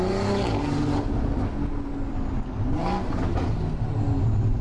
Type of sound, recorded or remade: recorded